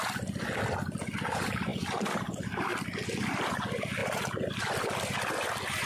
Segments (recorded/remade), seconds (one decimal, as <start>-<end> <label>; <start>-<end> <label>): 0.0-5.9 recorded